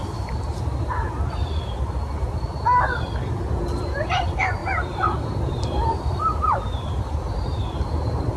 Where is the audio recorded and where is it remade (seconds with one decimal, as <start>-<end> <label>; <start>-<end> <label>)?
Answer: 0.0-1.4 remade; 1.4-3.8 recorded; 3.8-8.4 remade